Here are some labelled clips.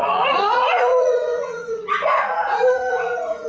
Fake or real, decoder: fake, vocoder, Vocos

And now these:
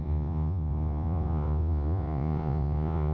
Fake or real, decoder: fake, vocoder, Vocos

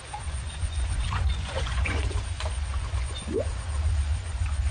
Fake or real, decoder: fake, vocoder, Vocos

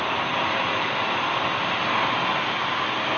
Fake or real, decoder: real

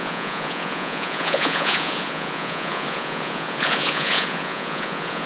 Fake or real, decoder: fake, vocoder, Vocos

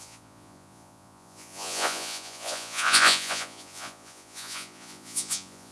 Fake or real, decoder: fake, vocoder, Vocos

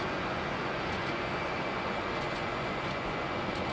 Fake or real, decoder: fake, vocoder, Vocos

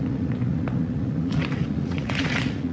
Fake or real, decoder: fake, vocoder, Vocos